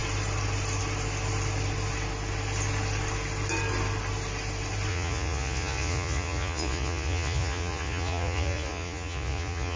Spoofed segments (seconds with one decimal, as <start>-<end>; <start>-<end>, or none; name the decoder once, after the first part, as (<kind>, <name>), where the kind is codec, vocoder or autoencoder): 4.9-9.8 (vocoder, Vocos)